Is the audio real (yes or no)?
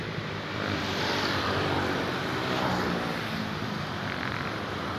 no